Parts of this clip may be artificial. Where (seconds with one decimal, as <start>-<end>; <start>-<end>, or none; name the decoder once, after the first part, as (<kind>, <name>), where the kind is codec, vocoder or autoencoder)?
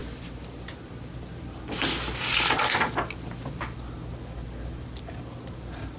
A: none